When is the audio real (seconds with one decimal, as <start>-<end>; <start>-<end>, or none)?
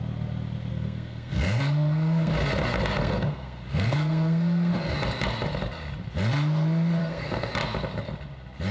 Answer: 0.0-0.7; 2.3-3.0; 4.7-7.0; 7.5-8.7